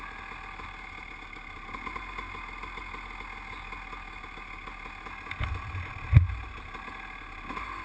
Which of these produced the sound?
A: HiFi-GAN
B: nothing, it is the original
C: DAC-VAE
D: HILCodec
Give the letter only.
B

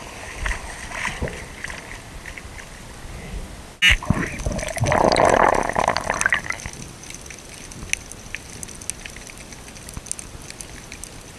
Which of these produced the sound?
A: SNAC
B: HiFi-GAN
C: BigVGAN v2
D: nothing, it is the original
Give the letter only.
D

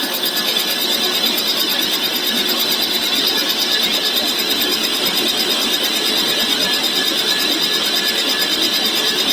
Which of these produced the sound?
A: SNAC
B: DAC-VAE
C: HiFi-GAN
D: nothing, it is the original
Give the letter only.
D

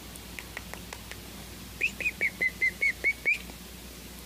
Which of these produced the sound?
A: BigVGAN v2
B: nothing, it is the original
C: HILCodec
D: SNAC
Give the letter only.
B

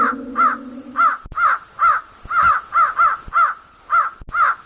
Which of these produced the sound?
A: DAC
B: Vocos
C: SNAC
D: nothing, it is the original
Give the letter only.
D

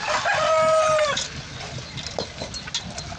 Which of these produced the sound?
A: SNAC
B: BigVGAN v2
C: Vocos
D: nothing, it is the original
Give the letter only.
D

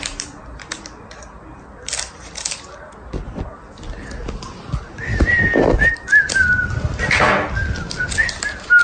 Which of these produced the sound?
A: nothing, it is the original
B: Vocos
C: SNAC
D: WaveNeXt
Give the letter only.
A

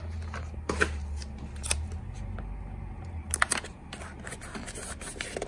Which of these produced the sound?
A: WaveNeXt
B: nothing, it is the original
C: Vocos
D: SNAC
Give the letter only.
B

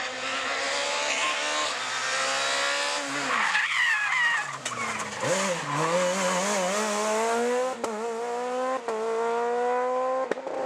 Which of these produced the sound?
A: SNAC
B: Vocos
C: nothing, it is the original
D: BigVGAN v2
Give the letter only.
C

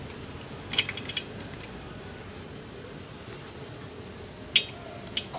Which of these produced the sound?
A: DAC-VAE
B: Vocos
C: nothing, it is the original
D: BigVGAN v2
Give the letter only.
C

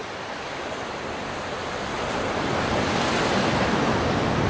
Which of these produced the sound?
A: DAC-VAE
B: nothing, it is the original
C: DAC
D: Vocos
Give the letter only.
B